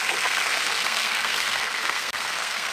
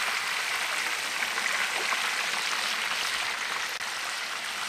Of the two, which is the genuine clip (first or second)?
second